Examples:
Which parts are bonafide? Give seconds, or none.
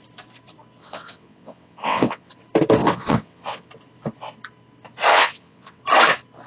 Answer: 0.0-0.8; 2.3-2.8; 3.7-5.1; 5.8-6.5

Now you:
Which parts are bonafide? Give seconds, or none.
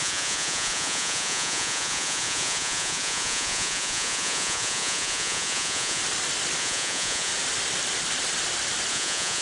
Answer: 6.0-6.6; 7.3-8.9